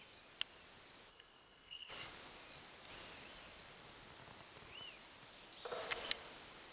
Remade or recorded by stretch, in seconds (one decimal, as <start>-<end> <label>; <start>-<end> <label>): 0.0-1.1 recorded; 1.1-1.9 remade; 1.9-6.7 recorded